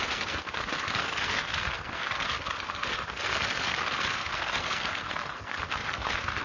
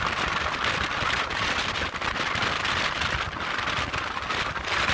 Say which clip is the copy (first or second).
first